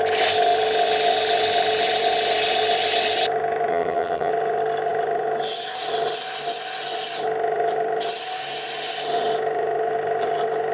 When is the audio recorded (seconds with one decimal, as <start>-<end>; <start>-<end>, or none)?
0.0-3.7; 4.3-10.7